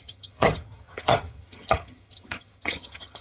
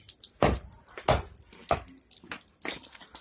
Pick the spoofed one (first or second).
first